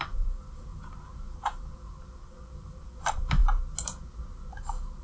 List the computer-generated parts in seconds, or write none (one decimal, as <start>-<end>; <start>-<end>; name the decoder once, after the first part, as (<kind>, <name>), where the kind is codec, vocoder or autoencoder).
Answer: 0.0-3.4 (vocoder, BigVGAN v2)